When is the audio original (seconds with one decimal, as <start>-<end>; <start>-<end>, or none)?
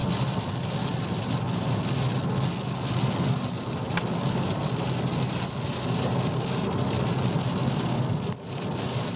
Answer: 0.0-9.2